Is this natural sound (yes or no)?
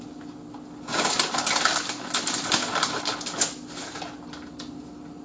yes